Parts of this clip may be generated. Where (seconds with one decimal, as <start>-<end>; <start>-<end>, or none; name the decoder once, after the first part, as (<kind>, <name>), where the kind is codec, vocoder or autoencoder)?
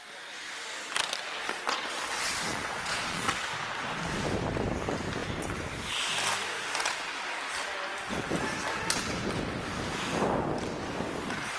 2.5-3.3 (vocoder, Vocos)